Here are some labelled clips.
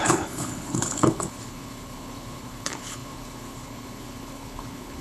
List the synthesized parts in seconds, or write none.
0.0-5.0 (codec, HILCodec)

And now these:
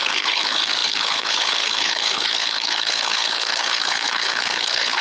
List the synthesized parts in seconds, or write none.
0.0-5.0 (codec, HILCodec)